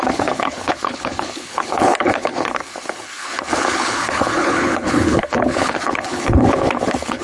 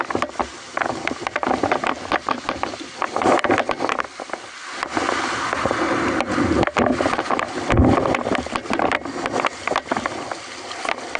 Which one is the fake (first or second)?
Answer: first